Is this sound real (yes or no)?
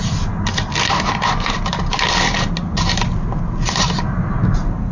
yes